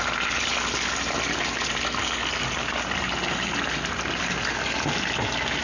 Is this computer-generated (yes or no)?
no